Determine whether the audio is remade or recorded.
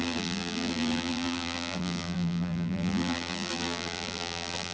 remade